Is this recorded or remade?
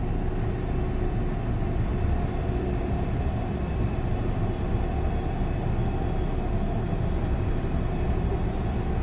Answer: recorded